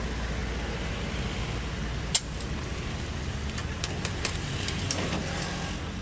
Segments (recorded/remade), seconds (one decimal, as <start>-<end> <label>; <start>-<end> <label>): 0.0-6.0 recorded

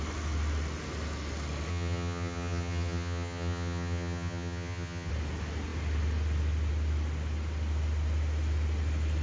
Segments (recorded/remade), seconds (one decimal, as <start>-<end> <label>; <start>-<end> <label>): 0.0-1.7 recorded; 1.7-5.1 remade; 5.1-9.2 recorded

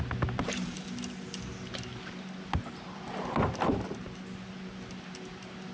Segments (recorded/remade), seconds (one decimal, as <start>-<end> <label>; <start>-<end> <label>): 0.0-5.7 recorded